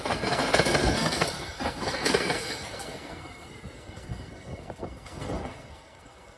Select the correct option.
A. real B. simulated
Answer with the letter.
B